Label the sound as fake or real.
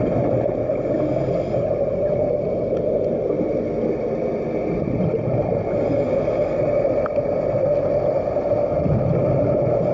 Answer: real